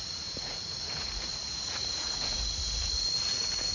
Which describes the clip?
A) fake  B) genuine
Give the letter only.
A